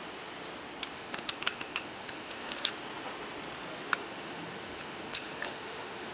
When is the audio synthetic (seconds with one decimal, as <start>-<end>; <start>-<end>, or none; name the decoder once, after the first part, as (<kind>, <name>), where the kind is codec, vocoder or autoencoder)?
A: 0.9-2.7 (autoencoder, DAC-VAE); 4.0-6.1